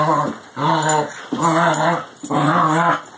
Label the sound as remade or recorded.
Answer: recorded